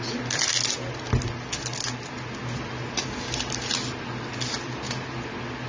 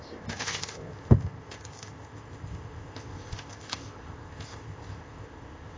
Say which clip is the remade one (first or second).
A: second